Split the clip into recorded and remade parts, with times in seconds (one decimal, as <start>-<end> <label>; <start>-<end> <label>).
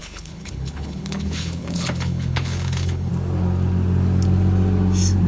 0.0-3.1 remade; 3.1-5.3 recorded